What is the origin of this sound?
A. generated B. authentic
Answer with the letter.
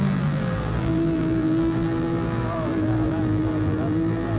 A